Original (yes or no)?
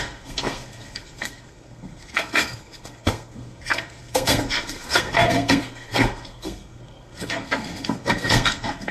no